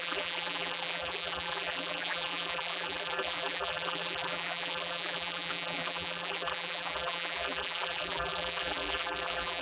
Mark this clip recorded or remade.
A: remade